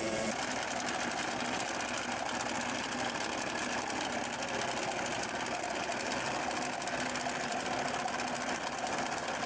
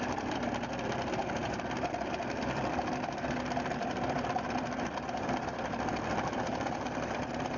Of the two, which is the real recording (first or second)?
first